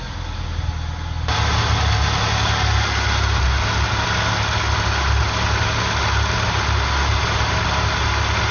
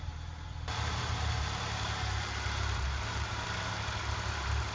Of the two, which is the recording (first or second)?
first